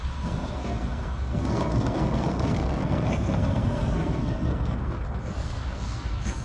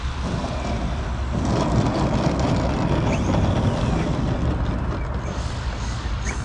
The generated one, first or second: first